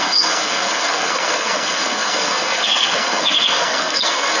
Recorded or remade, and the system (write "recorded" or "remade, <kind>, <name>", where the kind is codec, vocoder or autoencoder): remade, codec, SNAC